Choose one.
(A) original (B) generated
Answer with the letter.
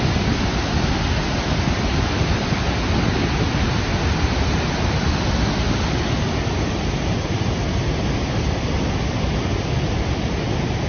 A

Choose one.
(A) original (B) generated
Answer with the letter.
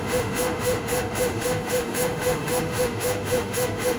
B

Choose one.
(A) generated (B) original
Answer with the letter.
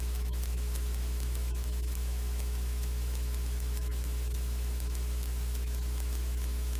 A